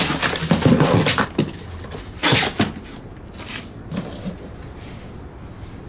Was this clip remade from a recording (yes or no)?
no